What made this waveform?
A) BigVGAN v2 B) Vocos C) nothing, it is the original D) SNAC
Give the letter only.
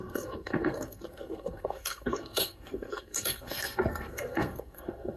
D